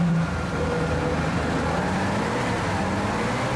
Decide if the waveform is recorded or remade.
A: recorded